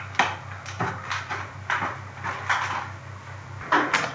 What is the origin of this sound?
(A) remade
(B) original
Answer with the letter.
B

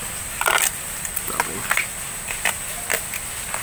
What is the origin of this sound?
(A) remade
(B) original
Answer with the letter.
B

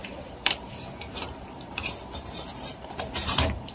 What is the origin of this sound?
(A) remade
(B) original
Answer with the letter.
A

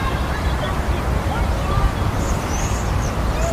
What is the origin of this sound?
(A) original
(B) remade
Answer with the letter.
B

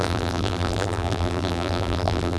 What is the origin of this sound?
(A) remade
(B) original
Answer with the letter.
A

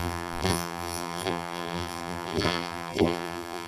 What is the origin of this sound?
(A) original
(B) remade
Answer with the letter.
B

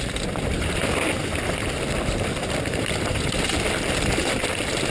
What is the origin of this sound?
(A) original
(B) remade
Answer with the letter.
B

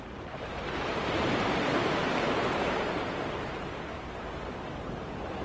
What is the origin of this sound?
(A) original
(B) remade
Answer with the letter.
B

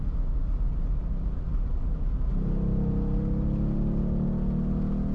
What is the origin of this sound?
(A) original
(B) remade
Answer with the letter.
A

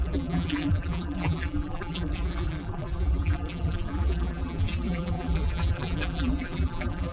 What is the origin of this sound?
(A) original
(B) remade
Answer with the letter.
B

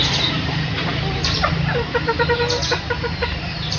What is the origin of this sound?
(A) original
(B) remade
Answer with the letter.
B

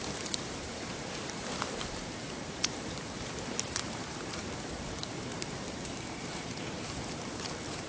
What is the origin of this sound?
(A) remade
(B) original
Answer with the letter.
A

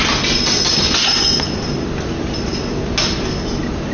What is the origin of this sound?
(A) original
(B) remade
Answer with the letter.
A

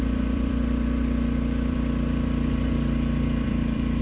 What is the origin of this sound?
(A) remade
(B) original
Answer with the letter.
A